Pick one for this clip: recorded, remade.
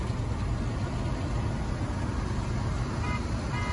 recorded